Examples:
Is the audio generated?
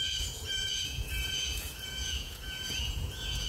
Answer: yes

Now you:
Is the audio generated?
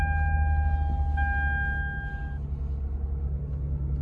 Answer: no